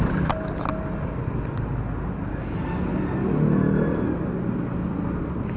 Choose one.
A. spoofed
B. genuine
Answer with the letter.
B